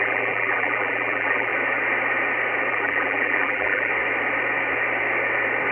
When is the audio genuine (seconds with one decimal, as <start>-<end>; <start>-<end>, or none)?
1.5-2.7; 3.9-5.7